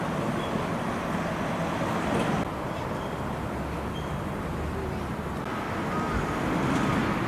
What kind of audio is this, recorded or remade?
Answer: recorded